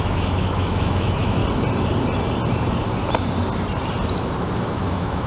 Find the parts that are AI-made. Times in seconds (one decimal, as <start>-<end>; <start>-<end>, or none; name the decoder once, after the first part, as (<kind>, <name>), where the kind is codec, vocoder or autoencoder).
0.0-1.4 (autoencoder, DAC-VAE); 4.6-5.3